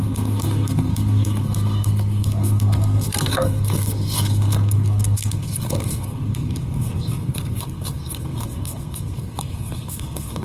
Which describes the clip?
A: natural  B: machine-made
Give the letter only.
B